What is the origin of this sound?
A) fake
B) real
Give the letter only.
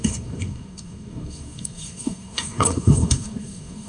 A